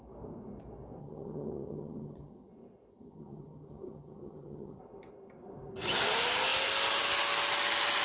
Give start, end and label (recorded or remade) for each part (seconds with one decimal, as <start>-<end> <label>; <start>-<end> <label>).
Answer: 0.0-1.0 recorded; 1.0-2.5 remade; 2.5-2.9 recorded; 2.9-4.8 remade; 4.8-8.0 recorded